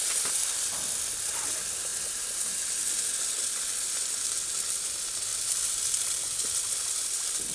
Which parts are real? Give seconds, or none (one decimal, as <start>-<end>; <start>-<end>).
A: 0.0-7.5